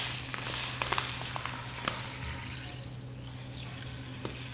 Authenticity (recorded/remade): recorded